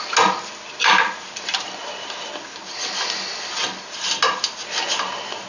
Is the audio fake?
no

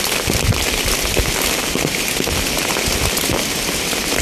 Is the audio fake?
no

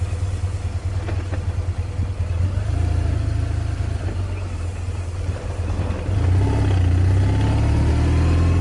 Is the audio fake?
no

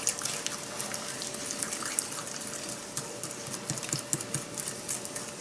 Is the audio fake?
no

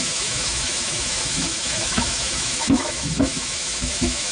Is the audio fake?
yes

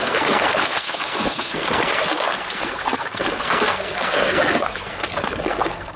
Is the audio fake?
yes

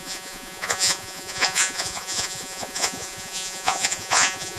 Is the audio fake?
yes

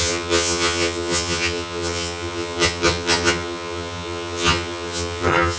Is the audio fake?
yes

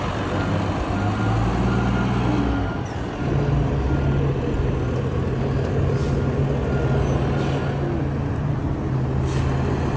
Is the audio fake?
no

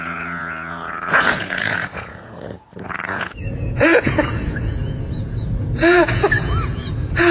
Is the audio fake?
yes